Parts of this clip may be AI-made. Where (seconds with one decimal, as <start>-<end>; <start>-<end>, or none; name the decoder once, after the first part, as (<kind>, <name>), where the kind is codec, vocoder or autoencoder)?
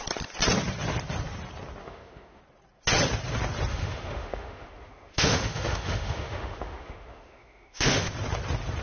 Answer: 1.8-2.4 (autoencoder, DAC-VAE); 3.7-8.1